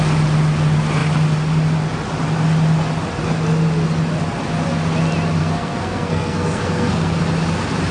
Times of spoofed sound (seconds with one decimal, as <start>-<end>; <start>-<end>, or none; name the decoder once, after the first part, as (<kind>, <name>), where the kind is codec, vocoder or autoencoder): 5.4-7.2 (codec, SNAC)